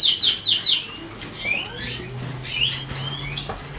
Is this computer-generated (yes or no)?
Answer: no